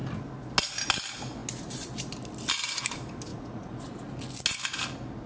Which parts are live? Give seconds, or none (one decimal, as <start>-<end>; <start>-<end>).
0.0-3.3; 4.1-5.3